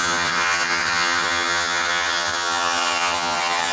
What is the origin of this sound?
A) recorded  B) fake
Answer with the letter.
B